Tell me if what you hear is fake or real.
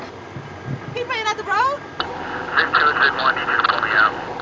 real